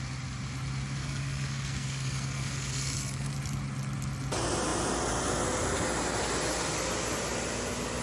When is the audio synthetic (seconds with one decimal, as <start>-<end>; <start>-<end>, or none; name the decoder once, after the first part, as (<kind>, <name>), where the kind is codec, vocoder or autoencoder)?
1.0-3.3 (codec, SNAC)